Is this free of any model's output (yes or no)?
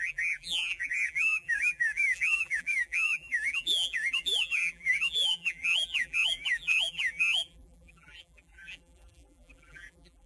no